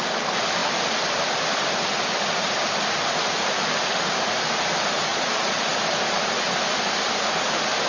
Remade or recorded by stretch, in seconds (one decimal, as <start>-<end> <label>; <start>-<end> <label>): 0.0-5.1 recorded; 5.1-5.6 remade; 5.6-7.9 recorded